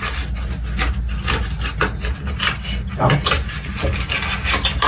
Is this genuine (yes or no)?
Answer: yes